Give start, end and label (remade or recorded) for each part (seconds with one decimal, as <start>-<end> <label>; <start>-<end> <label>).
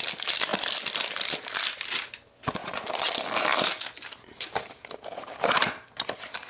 0.0-0.5 recorded; 0.5-1.3 remade; 1.3-2.6 recorded; 2.6-3.7 remade; 3.7-6.5 recorded